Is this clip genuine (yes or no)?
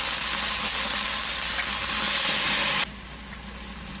yes